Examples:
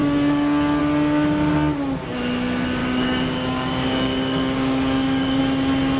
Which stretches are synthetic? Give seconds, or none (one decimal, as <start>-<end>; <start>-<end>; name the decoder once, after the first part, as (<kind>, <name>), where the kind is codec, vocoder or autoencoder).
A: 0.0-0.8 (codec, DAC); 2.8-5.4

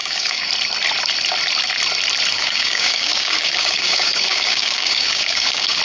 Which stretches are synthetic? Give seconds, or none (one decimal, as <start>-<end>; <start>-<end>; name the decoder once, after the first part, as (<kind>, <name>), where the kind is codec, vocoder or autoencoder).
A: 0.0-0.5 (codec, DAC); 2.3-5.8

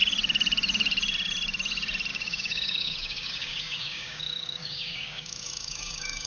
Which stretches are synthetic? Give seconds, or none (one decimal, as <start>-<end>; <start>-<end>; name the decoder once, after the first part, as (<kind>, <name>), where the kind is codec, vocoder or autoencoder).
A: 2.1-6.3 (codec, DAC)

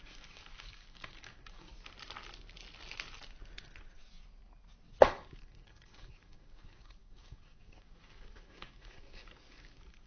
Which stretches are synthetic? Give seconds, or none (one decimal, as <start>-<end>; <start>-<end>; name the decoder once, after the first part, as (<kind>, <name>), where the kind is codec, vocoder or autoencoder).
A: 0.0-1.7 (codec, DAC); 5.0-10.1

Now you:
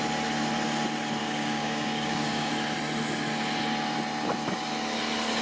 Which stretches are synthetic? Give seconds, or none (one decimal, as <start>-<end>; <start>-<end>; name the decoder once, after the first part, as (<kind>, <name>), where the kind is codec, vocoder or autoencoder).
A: 1.2-2.5 (codec, DAC)

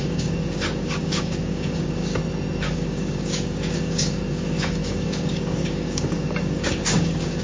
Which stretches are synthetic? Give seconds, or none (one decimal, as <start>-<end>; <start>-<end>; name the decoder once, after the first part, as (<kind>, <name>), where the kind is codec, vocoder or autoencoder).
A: 0.0-2.1 (codec, DAC); 2.6-7.4

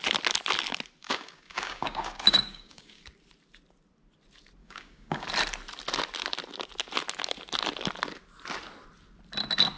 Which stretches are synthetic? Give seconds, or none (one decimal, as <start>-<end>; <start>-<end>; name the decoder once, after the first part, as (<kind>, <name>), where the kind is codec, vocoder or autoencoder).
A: 1.0-3.0 (codec, DAC); 4.6-5.3